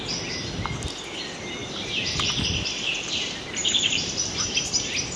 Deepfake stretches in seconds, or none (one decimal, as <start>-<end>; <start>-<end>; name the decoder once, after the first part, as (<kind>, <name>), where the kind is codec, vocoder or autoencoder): 1.6-4.7 (vocoder, BigVGAN v2)